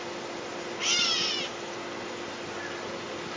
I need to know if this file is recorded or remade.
recorded